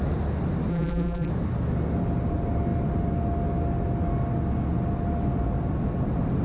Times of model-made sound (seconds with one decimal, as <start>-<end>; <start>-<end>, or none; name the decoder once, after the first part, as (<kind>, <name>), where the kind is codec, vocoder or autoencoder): 0.7-1.3 (vocoder, BigVGAN v2)